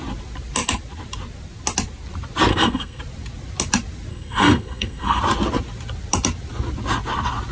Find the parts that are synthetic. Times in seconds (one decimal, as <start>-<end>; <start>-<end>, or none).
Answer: 2.5-3.0; 4.1-5.2